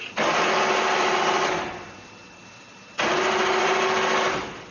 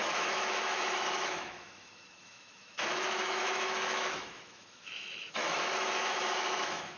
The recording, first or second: first